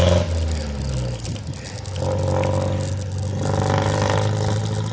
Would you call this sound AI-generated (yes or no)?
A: no